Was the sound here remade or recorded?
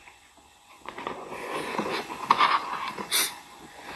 remade